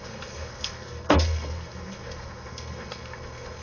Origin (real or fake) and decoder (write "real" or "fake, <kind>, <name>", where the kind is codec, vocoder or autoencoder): fake, codec, SNAC